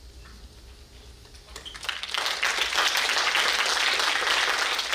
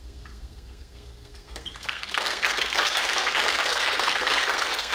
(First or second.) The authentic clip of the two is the first